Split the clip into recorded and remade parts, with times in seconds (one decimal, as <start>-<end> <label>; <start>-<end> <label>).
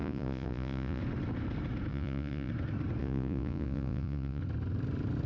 0.0-1.0 remade; 1.0-1.9 recorded; 1.9-2.5 remade; 2.5-3.0 recorded; 3.0-4.4 remade; 4.4-5.3 recorded